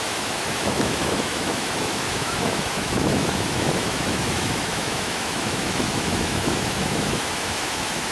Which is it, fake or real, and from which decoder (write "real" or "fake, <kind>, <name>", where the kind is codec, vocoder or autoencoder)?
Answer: fake, autoencoder, DAC-VAE